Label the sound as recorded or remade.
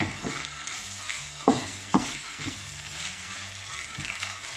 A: remade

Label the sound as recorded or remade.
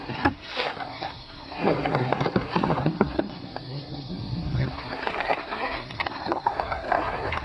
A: remade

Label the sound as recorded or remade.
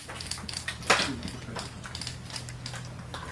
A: recorded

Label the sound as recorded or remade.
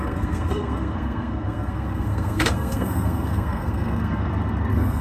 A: remade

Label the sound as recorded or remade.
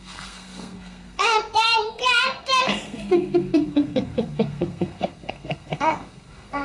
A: remade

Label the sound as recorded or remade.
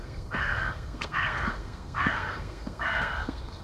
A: remade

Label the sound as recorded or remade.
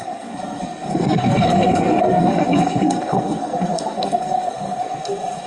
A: remade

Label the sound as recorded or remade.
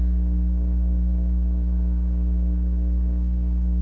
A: remade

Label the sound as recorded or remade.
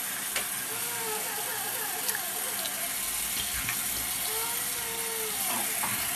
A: recorded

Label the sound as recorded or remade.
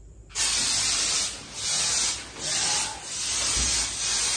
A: recorded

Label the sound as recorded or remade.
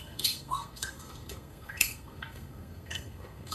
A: remade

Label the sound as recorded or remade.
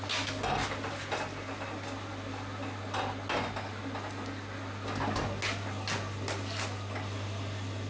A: recorded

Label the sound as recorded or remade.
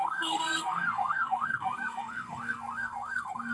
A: remade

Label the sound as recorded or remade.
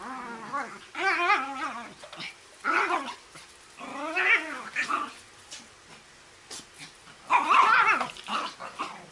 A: recorded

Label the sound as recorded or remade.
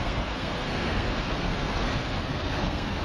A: remade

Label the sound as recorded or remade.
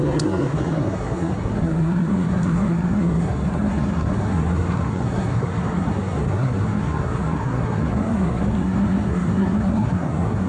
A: remade